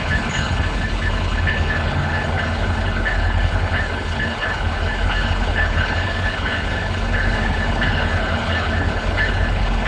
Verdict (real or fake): fake